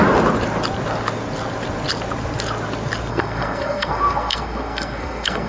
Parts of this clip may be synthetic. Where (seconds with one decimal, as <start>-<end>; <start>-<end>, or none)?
3.1-5.5